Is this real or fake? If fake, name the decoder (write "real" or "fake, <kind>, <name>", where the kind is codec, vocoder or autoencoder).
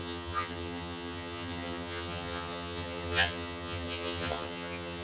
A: fake, vocoder, HiFi-GAN